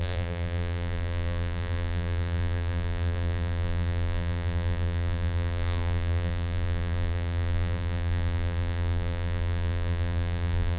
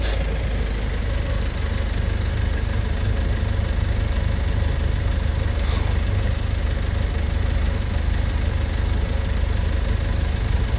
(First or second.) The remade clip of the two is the first